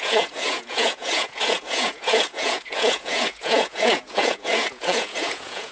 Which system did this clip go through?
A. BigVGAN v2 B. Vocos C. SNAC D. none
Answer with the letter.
B